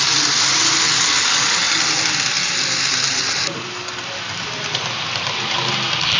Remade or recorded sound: recorded